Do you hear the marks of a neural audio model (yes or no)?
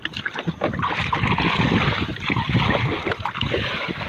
no